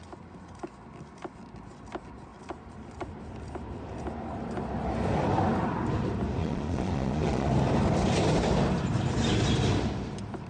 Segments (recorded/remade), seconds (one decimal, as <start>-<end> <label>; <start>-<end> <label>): 0.0-6.4 recorded; 6.4-7.5 remade; 7.5-10.5 recorded